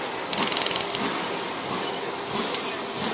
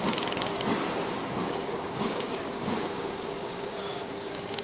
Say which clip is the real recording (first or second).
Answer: first